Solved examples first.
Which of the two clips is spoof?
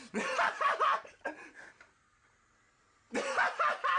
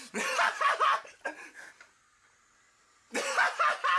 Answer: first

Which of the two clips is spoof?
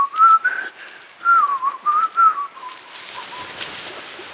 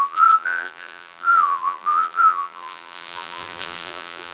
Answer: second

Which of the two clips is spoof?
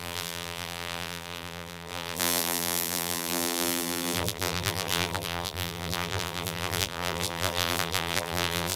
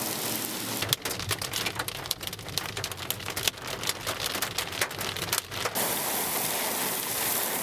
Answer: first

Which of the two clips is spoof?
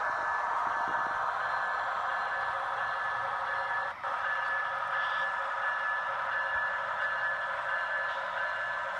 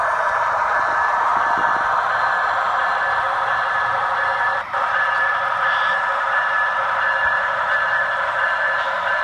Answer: second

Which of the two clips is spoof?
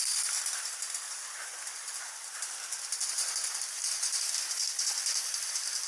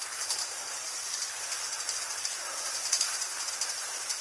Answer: second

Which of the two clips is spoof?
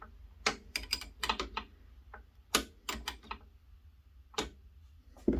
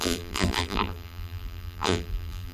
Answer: second